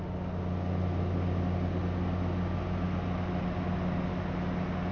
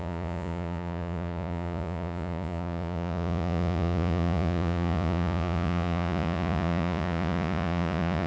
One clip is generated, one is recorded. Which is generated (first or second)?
second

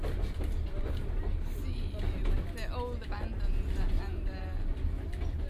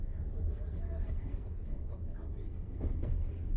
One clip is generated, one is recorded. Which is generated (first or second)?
second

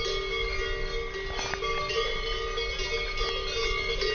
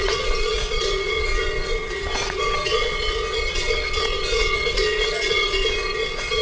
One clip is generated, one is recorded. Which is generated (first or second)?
second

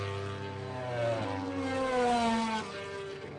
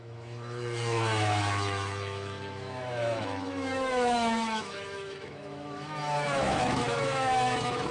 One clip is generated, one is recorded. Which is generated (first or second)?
second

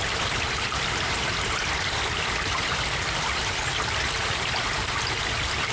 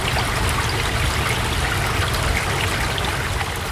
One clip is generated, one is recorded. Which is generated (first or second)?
first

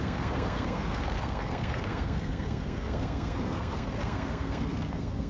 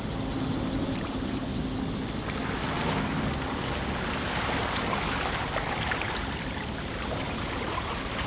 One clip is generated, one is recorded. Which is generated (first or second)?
first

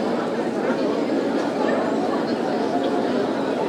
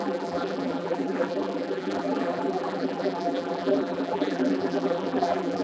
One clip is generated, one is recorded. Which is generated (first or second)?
second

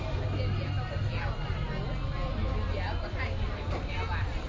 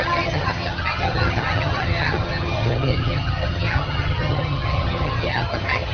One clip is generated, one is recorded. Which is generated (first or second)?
second